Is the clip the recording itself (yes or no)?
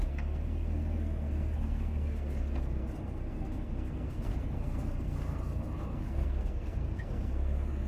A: no